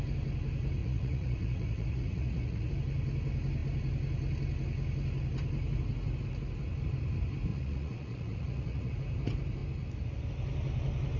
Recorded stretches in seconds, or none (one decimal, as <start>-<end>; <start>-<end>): 0.0-0.8; 2.7-7.5; 8.9-11.2